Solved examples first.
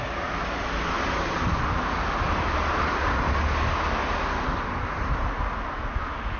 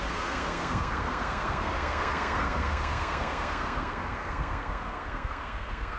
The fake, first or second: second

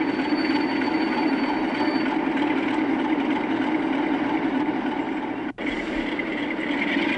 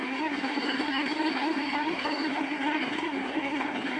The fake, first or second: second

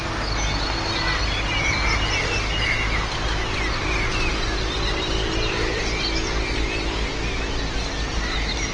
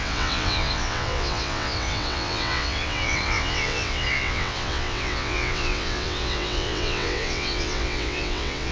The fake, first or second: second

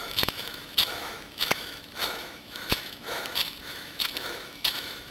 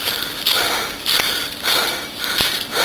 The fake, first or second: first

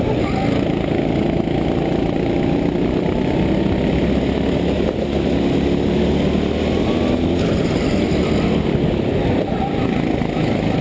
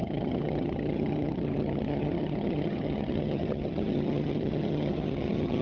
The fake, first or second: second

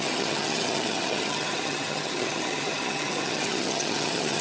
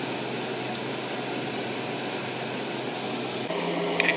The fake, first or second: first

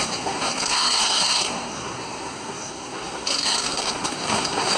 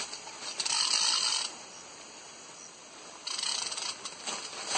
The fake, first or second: first